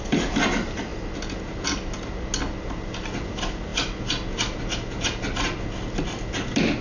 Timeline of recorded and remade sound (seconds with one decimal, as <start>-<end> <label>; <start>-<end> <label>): 0.0-6.8 recorded